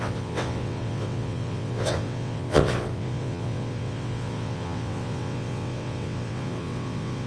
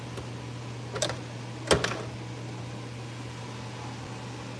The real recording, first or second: second